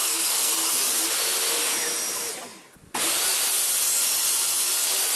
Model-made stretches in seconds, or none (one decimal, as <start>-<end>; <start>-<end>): 0.0-0.7